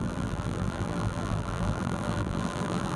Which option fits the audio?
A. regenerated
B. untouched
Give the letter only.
A